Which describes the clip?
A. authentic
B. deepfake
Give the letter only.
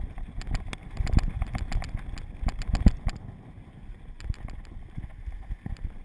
A